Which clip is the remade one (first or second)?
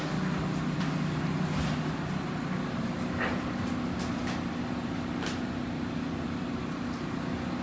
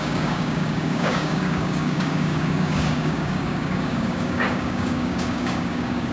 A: second